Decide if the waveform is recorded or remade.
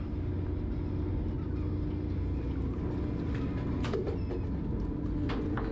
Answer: recorded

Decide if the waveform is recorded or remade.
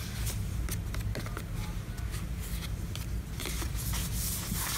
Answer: recorded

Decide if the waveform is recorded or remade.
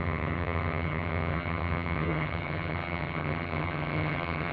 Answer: remade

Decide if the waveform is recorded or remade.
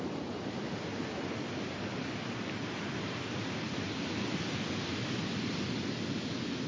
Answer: recorded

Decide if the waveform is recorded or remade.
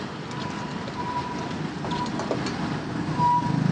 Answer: recorded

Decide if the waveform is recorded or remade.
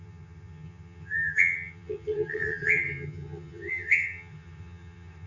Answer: remade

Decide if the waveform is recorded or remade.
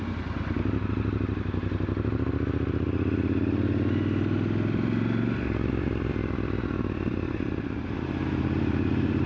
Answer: recorded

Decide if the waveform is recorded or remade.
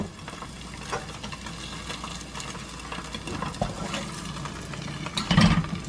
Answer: recorded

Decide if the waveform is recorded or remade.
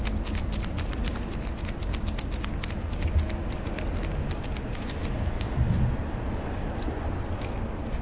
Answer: recorded